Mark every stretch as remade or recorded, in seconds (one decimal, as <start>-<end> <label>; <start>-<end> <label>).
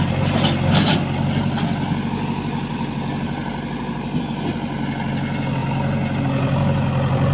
0.0-7.3 recorded